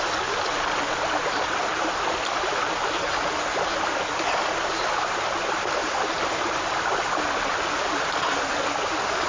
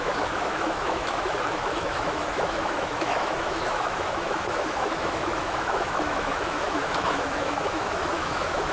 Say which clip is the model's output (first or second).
second